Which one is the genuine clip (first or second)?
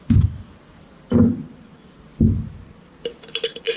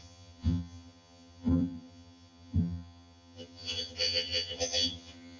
first